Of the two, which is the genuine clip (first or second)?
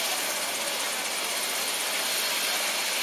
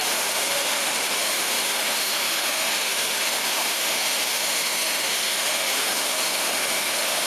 first